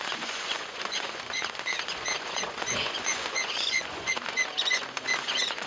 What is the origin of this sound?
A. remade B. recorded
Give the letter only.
A